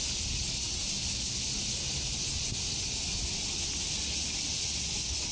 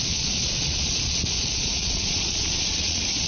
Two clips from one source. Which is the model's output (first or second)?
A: second